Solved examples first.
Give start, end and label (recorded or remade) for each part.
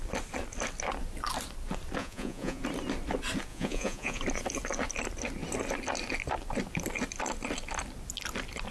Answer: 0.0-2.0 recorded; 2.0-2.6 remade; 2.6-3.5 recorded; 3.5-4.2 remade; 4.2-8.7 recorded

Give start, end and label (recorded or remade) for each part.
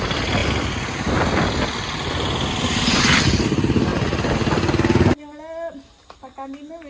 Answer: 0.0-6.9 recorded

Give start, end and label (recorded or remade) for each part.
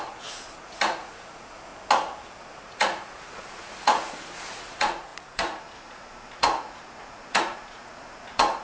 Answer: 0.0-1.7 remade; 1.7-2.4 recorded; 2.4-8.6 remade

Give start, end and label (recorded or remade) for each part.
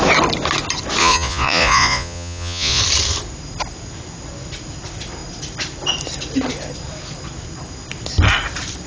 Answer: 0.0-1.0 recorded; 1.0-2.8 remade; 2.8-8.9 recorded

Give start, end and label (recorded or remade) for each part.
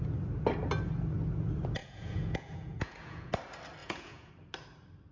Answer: 0.0-1.8 recorded; 1.8-3.3 remade; 3.3-3.8 recorded; 3.8-4.3 remade; 4.3-5.1 recorded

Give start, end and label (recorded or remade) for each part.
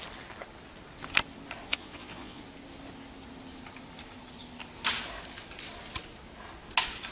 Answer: 0.0-1.7 recorded; 1.7-2.4 remade; 2.4-7.1 recorded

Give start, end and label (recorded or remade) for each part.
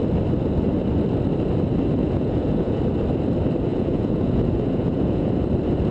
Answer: 0.0-2.0 recorded; 2.0-2.8 remade; 2.8-3.7 recorded; 3.7-5.3 remade; 5.3-5.9 recorded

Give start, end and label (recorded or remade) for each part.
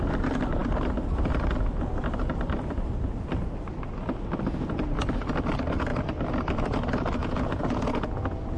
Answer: 0.0-7.2 recorded; 7.2-8.6 remade